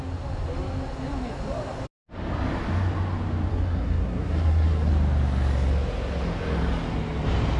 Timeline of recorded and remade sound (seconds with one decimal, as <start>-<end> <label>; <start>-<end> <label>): 0.0-3.5 recorded; 3.5-4.9 remade; 4.9-7.6 recorded